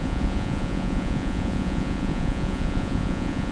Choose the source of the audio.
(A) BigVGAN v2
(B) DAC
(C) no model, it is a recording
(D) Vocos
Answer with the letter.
D